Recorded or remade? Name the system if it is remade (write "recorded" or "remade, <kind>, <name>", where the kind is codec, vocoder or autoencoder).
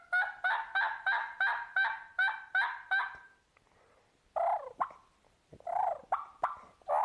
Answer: recorded